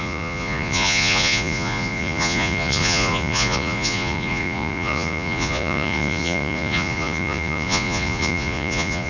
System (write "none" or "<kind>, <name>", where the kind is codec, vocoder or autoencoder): vocoder, Vocos